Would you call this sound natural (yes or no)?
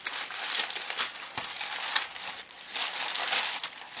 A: yes